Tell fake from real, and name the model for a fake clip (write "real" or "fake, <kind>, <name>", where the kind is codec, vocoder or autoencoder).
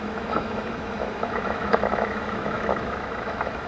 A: fake, autoencoder, DAC-VAE